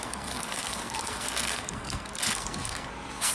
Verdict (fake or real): fake